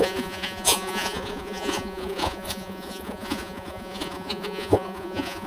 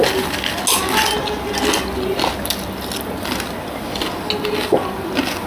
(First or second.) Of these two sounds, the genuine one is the second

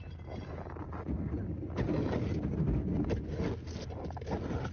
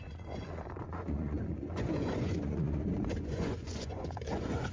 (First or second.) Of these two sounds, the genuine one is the first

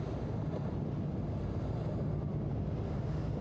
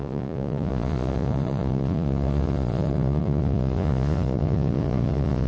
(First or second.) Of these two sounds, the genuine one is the first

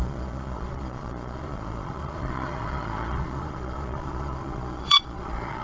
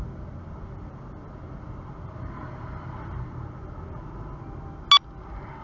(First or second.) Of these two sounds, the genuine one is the second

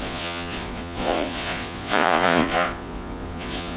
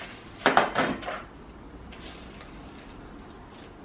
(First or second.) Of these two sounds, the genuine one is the second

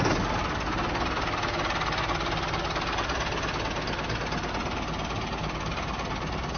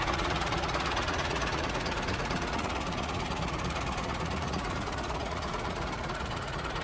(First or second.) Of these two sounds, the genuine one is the first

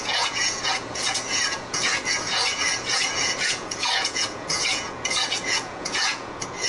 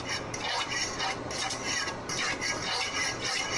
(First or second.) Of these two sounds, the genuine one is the second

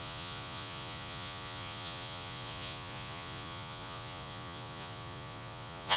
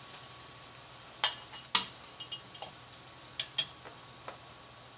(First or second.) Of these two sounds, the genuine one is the second